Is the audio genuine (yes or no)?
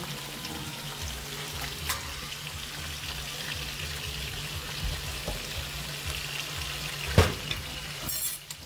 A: yes